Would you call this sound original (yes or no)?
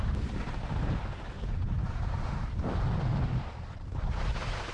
yes